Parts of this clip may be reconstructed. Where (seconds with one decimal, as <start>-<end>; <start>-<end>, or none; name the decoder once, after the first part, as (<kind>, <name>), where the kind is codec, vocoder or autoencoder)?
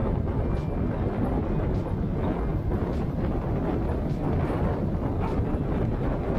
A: 0.0-0.5 (vocoder, BigVGAN v2); 2.5-3.5